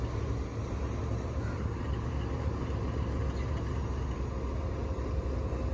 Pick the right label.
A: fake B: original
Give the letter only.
B